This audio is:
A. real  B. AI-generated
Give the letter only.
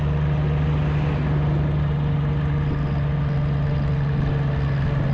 A